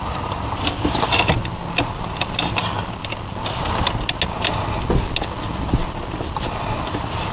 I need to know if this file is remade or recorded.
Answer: recorded